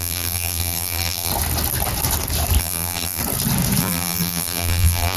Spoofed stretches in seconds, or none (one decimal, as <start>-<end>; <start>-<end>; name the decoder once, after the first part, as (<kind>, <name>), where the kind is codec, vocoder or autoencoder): 0.0-1.3 (vocoder, BigVGAN v2); 2.6-3.2; 3.8-5.2